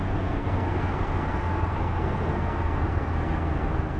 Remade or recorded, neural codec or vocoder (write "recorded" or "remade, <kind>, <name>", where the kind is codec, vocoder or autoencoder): remade, codec, SNAC